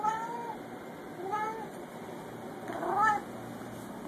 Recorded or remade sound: recorded